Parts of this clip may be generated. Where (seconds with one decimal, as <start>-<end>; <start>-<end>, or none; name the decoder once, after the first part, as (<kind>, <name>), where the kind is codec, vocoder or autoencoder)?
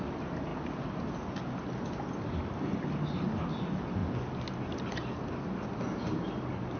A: none